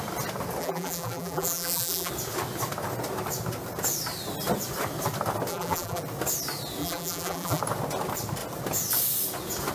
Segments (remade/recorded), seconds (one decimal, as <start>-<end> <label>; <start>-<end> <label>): 0.0-0.6 recorded; 0.6-2.1 remade; 2.1-5.5 recorded; 5.5-6.0 remade; 6.0-6.8 recorded; 6.8-7.6 remade; 7.6-9.7 recorded